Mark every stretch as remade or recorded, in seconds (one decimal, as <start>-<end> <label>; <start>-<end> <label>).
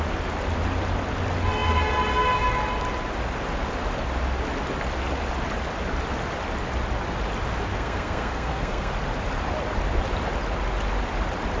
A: 0.0-7.7 recorded; 7.7-8.9 remade; 8.9-11.6 recorded